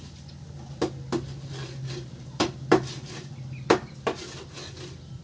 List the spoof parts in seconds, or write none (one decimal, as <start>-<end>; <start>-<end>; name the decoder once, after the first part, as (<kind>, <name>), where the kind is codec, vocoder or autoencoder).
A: 1.6-4.2 (vocoder, BigVGAN v2)